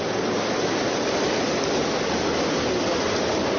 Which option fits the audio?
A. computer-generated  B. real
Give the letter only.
B